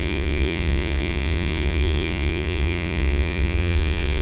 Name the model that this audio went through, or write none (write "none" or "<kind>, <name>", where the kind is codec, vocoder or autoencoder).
vocoder, Vocos